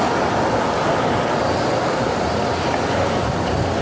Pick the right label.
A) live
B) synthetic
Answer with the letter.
A